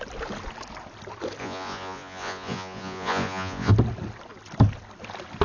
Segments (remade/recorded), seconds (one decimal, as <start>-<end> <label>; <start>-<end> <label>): 0.0-1.4 recorded; 1.4-3.7 remade; 3.7-5.4 recorded